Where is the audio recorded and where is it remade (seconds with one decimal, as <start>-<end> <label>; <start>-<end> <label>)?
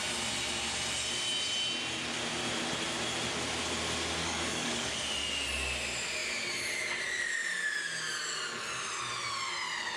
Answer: 0.0-4.2 recorded; 4.2-4.9 remade; 4.9-10.0 recorded